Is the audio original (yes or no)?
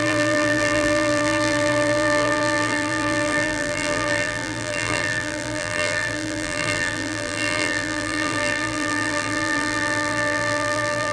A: no